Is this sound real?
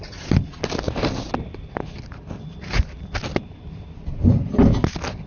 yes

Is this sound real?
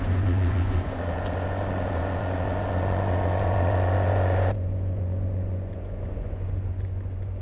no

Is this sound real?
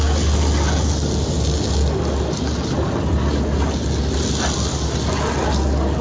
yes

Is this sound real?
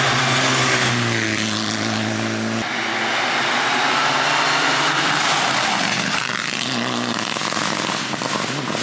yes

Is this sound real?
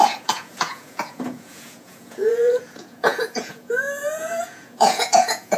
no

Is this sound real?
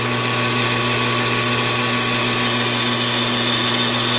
yes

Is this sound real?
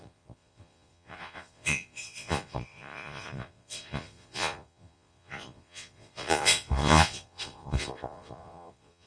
no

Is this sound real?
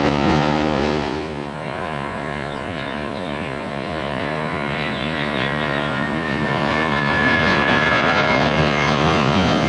no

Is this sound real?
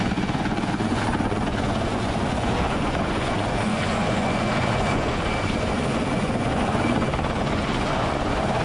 no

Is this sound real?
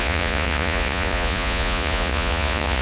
no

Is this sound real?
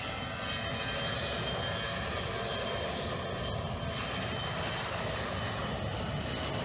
yes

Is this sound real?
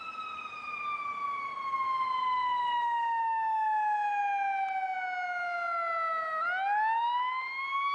yes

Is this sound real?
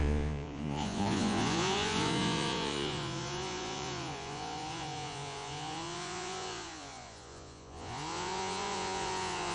no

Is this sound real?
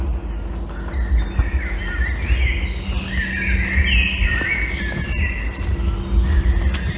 yes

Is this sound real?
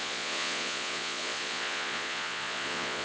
no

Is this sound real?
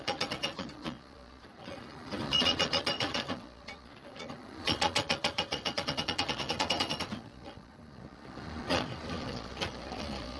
no